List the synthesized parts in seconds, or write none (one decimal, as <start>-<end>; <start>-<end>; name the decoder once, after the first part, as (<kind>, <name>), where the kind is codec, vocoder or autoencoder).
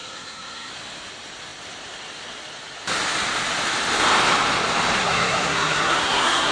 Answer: 0.0-0.7 (codec, SNAC); 5.0-6.5